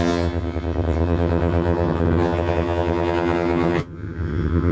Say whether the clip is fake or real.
fake